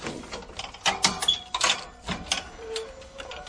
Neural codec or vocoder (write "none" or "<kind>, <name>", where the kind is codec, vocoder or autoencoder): none